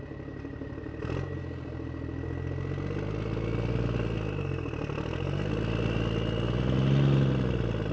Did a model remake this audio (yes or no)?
no